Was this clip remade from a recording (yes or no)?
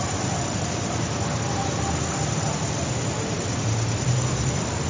no